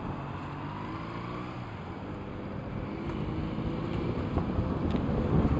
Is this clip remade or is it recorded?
recorded